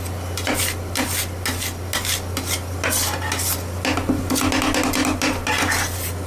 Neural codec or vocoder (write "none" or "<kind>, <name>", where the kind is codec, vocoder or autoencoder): none